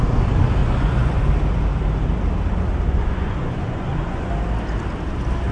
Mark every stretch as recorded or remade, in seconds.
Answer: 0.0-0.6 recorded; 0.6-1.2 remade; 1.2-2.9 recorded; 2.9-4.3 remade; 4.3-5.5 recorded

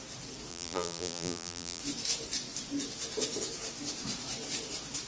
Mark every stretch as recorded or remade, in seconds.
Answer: 0.0-0.5 recorded; 0.5-1.8 remade; 1.8-5.1 recorded

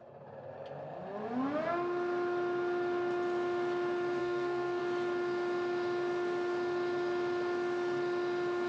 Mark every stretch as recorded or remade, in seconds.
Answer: 0.0-4.2 recorded; 4.2-4.8 remade; 4.8-8.7 recorded

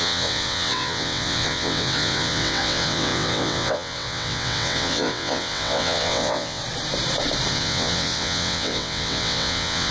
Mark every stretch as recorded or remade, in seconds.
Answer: 0.0-6.6 remade; 6.6-7.5 recorded; 7.5-9.9 remade

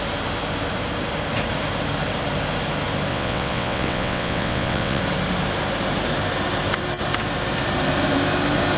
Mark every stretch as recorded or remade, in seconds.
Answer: 0.0-3.1 recorded; 3.1-5.0 remade; 5.0-8.8 recorded

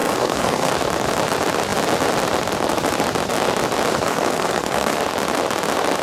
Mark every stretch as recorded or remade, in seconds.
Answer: 0.0-0.7 remade; 0.7-3.9 recorded; 3.9-5.0 remade; 5.0-6.0 recorded

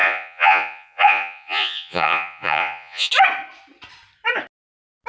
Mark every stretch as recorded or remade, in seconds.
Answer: 0.0-3.1 remade; 3.1-5.1 recorded